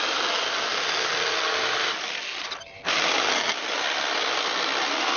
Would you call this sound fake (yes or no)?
no